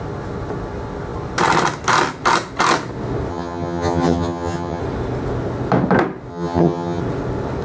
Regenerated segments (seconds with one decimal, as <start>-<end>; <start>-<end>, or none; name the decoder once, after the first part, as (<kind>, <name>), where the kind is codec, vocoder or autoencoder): 3.3-4.8 (vocoder, HiFi-GAN); 6.3-7.0